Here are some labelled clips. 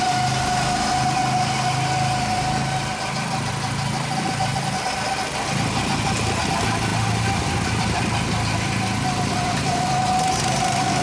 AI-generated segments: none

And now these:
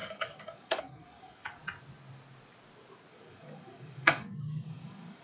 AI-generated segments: 0.0-1.6; 3.1-5.2

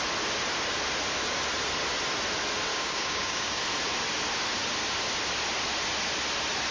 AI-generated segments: 2.7-3.6

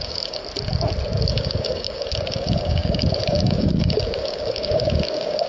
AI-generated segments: 0.0-0.4; 1.3-5.5